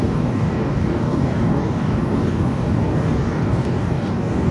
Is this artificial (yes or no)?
yes